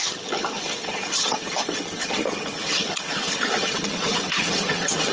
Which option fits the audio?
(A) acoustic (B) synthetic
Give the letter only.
B